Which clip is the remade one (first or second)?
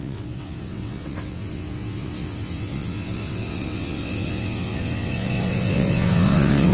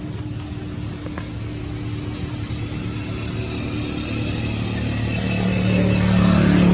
first